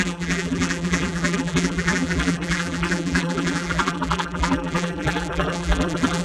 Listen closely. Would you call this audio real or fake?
fake